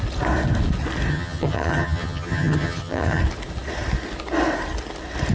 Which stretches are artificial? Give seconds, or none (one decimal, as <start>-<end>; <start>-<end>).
1.1-3.2